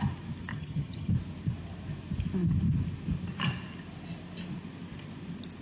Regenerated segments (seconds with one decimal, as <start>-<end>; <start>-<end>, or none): 0.5-1.1